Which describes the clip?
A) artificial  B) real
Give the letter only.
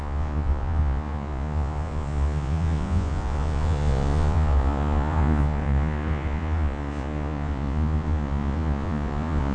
A